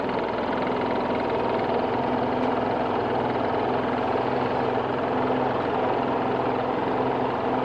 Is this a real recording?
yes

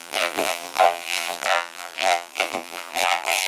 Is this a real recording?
no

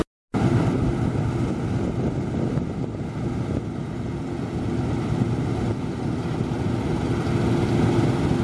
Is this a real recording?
yes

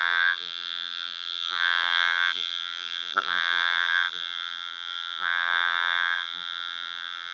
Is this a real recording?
no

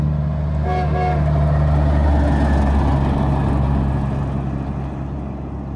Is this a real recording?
yes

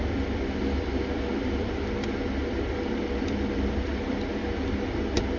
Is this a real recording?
no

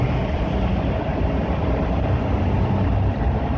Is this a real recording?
no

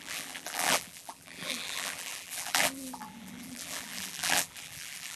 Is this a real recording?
no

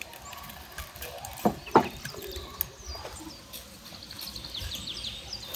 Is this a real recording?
yes